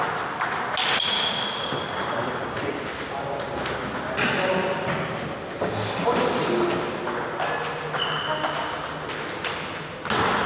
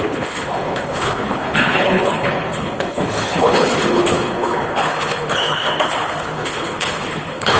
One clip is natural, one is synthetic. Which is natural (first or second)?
first